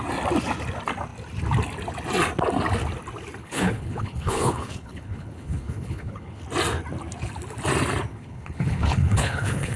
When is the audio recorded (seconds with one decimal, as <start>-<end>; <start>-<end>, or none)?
0.0-3.4; 6.4-8.1